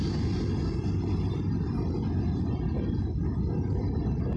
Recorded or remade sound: recorded